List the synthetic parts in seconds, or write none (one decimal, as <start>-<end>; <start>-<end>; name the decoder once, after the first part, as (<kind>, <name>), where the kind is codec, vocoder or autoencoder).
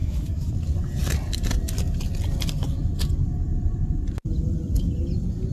0.0-0.5 (autoencoder, DAC-VAE)